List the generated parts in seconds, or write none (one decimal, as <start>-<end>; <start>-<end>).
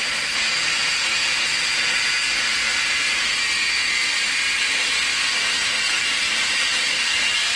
0.0-0.5; 2.5-5.1; 6.3-7.6